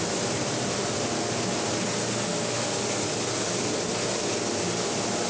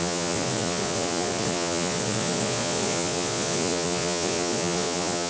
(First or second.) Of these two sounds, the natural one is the first